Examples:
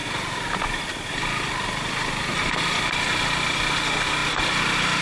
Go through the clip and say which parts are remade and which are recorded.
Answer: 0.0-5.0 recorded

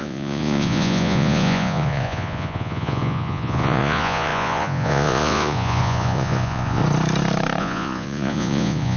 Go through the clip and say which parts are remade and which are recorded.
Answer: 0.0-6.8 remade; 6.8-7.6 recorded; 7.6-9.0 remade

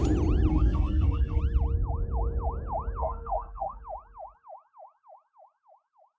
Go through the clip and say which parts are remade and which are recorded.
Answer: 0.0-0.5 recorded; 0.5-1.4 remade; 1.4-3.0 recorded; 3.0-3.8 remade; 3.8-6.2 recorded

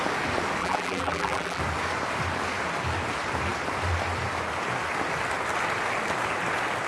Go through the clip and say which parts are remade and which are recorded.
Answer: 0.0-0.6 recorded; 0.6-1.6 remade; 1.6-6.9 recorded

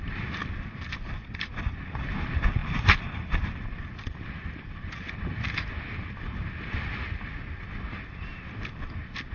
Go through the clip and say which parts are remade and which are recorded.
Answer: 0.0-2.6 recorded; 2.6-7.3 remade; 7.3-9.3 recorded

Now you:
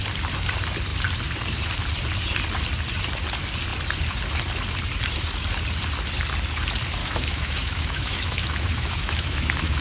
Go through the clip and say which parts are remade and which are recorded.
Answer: 0.0-7.0 recorded; 7.0-9.8 remade

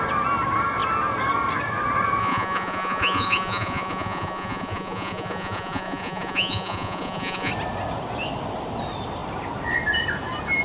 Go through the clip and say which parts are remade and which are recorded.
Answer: 0.0-2.2 recorded; 2.2-7.5 remade; 7.5-10.6 recorded